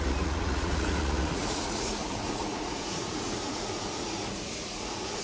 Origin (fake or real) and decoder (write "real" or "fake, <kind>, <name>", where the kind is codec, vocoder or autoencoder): fake, vocoder, Vocos